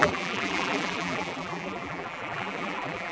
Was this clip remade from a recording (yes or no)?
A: yes